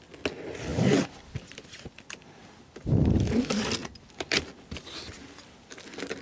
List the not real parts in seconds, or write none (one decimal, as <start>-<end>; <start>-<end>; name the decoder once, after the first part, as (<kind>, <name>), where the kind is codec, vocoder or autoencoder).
none

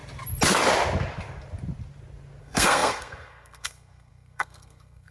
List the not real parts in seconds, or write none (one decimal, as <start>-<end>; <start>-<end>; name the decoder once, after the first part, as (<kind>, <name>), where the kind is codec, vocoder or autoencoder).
2.4-5.1 (codec, SNAC)

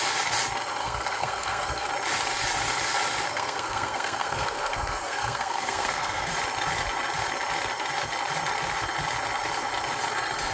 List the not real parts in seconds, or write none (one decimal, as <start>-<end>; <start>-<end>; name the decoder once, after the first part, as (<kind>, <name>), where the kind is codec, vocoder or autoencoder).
0.8-1.9 (codec, SNAC); 3.3-6.3

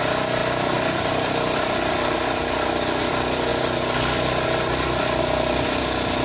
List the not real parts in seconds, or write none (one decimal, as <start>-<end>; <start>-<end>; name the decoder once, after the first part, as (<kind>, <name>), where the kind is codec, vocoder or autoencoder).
none

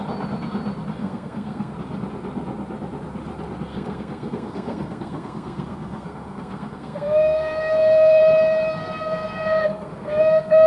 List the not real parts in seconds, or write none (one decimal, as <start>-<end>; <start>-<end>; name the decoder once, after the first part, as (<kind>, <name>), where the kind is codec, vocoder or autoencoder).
1.0-1.7 (codec, SNAC); 3.7-8.2; 8.8-10.7

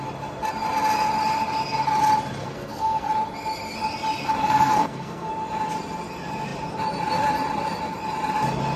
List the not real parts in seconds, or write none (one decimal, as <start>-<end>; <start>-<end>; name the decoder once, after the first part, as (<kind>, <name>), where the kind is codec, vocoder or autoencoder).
2.4-3.1 (codec, SNAC); 4.4-5.3

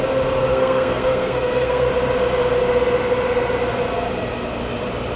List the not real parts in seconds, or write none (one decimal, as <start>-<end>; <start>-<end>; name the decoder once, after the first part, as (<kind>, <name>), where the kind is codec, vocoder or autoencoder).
0.5-1.9 (codec, SNAC)